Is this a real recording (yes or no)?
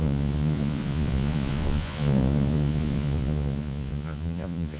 no